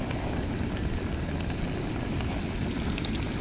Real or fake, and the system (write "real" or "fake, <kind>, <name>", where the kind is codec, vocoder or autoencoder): real